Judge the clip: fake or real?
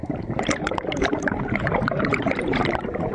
fake